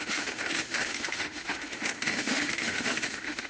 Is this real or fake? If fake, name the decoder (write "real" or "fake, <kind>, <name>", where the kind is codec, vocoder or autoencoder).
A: fake, autoencoder, DAC-VAE